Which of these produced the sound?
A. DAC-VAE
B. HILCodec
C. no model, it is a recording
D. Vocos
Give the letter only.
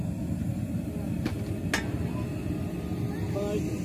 C